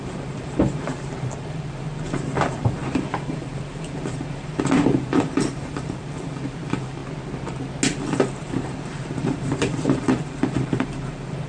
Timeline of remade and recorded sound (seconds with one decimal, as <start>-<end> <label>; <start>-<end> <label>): 0.0-7.0 remade; 7.0-8.0 recorded; 8.0-11.5 remade